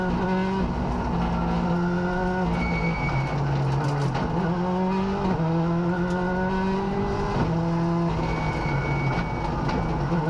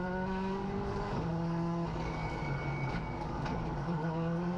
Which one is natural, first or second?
first